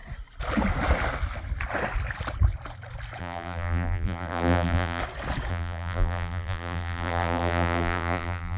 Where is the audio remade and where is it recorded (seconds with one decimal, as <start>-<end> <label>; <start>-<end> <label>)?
0.0-3.2 recorded; 3.2-5.0 remade; 5.0-5.5 recorded; 5.5-8.6 remade